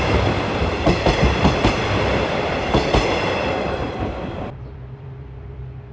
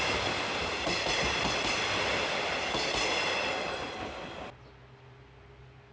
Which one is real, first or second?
second